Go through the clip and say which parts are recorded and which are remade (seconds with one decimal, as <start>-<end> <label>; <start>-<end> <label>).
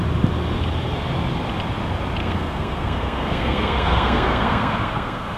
0.0-2.2 recorded; 2.2-5.4 remade